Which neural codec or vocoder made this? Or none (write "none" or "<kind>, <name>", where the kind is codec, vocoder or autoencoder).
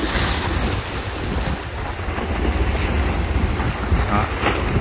none